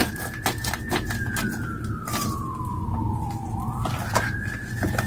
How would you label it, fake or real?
real